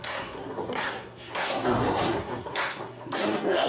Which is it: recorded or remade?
remade